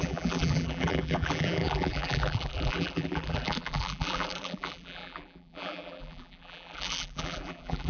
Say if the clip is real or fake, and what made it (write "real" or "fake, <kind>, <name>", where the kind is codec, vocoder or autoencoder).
fake, vocoder, BigVGAN v2